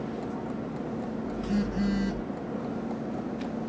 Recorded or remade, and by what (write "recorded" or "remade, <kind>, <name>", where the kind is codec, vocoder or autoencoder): recorded